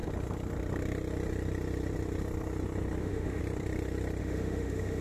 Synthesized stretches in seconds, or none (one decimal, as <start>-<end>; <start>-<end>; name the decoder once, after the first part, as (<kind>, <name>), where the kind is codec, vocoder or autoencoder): 3.0-3.4 (autoencoder, DAC-VAE); 4.2-5.0